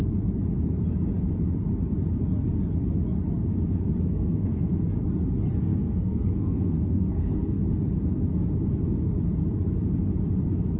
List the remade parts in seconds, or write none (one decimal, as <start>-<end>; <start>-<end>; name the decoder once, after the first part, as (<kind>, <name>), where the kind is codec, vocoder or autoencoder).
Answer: 4.1-4.7 (codec, SNAC); 5.6-7.6